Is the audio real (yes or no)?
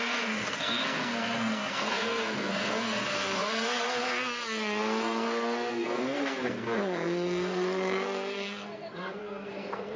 no